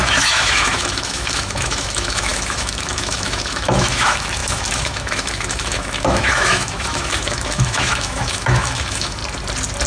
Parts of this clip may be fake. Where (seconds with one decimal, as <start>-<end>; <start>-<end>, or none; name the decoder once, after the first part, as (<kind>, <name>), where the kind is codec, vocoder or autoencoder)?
0.0-9.2 (autoencoder, DAC-VAE)